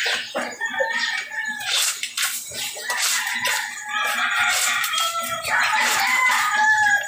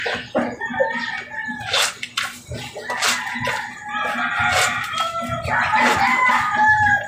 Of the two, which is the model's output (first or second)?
first